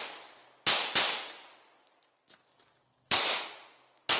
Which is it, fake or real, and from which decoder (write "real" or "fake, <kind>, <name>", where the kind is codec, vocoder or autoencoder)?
real